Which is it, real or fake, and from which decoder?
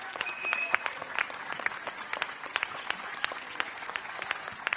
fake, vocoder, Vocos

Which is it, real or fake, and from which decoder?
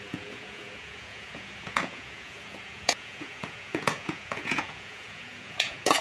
fake, vocoder, Vocos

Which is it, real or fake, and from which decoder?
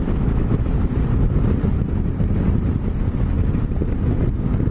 real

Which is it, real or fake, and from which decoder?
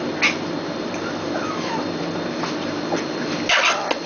real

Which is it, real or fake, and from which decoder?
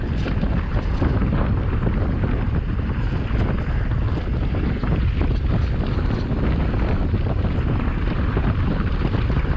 real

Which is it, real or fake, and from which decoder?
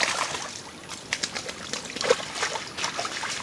real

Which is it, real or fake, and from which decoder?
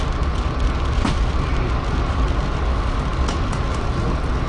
real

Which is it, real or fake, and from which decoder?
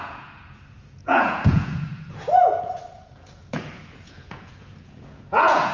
fake, vocoder, Vocos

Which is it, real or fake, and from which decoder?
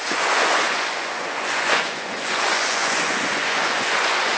fake, vocoder, Vocos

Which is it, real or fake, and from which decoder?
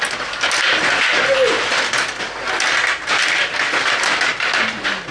real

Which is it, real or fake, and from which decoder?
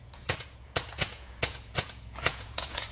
fake, vocoder, Vocos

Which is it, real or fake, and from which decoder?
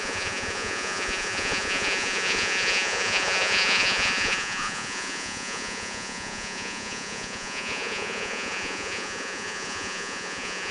fake, vocoder, Vocos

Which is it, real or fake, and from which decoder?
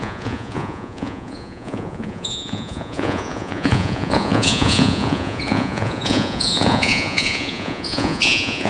fake, vocoder, Vocos